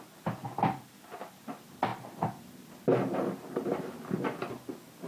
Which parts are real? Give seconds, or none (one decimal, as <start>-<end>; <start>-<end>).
0.0-1.9; 4.2-5.1